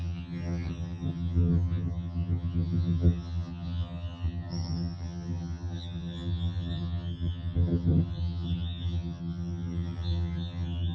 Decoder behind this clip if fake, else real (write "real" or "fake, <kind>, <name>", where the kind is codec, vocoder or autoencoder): fake, vocoder, HiFi-GAN